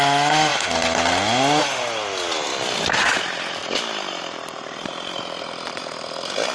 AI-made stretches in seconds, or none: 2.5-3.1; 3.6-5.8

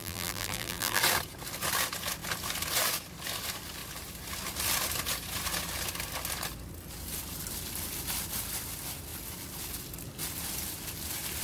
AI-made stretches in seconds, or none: 0.0-1.0

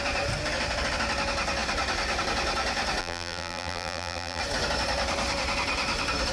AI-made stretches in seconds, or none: 3.0-4.4

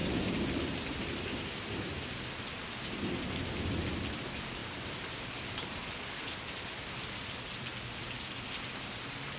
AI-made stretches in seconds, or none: 0.0-1.8; 2.6-3.4; 8.0-8.7

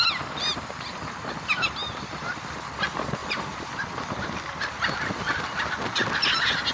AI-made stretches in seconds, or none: 3.2-5.7

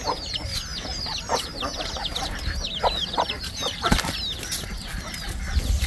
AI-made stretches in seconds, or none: 0.7-4.0